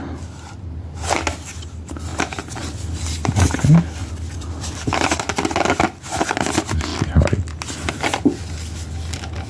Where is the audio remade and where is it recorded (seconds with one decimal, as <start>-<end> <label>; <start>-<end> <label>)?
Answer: 0.0-2.1 recorded; 2.1-2.6 remade; 2.6-4.0 recorded; 4.0-5.4 remade; 5.4-9.5 recorded